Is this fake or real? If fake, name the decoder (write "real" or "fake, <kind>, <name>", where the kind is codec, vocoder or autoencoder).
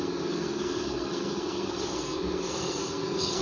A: fake, codec, SNAC